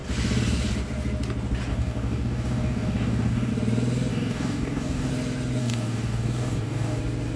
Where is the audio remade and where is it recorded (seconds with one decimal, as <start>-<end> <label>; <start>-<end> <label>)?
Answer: 0.0-1.7 recorded; 1.7-3.5 remade; 3.5-4.1 recorded; 4.1-5.1 remade; 5.1-5.6 recorded; 5.6-7.0 remade; 7.0-7.4 recorded